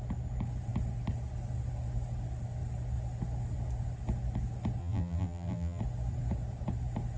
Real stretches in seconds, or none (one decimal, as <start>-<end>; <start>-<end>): 0.0-4.8; 5.8-7.2